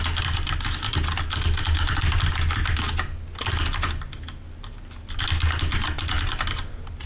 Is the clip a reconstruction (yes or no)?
no